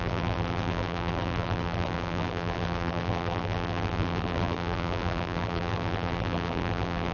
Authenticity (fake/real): fake